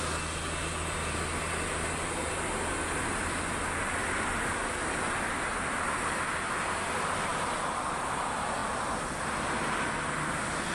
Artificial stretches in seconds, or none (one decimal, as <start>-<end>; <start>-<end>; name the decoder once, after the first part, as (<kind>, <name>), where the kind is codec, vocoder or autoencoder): 4.0-4.7 (vocoder, BigVGAN v2); 7.3-7.9